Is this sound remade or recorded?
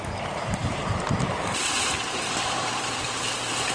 remade